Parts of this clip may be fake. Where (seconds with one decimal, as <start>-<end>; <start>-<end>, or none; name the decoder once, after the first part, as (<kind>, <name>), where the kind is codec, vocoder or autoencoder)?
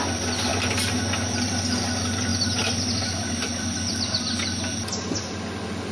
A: none